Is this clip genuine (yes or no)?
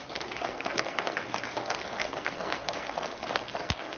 no